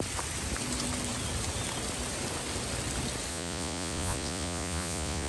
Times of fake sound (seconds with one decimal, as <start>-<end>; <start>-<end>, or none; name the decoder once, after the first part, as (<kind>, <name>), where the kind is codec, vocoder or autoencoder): 3.3-5.3 (vocoder, Vocos)